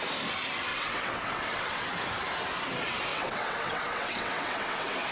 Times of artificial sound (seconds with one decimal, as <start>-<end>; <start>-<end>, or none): 0.7-1.9; 3.1-5.1